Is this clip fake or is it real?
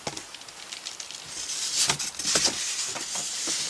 real